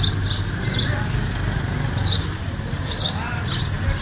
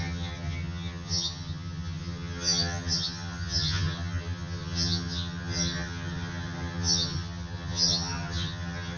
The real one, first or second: first